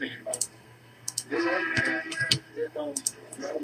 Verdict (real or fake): fake